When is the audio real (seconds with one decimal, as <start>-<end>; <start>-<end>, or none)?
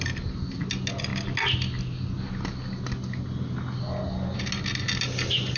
0.0-5.6